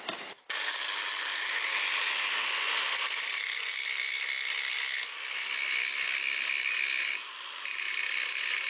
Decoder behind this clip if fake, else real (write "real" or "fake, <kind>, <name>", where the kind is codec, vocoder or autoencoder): real